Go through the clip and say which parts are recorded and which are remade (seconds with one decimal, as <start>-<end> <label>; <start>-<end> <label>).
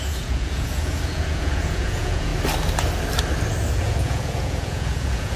0.0-2.3 remade; 2.3-3.7 recorded; 3.7-5.4 remade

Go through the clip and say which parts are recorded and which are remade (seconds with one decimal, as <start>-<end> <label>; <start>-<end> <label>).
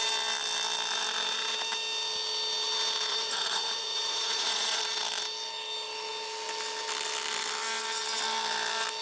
0.0-3.1 recorded; 3.1-4.8 remade; 4.8-9.0 recorded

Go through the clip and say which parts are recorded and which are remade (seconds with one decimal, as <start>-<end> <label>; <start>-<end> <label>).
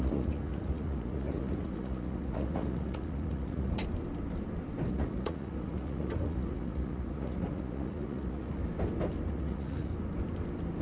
0.0-3.8 remade; 3.8-4.9 recorded; 4.9-8.6 remade; 8.6-9.3 recorded; 9.3-9.9 remade; 9.9-10.8 recorded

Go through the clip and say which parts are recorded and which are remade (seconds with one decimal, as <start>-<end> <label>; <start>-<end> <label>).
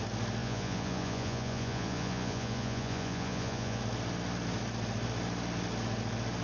0.0-0.4 recorded; 0.4-3.8 remade; 3.8-6.4 recorded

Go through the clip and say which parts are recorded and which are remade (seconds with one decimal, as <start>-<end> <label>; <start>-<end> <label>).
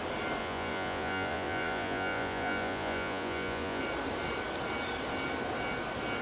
0.0-0.4 recorded; 0.4-3.8 remade; 3.8-6.2 recorded